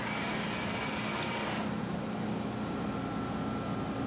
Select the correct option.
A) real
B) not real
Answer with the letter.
A